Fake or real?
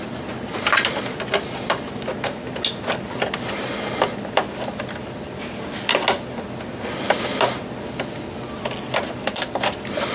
real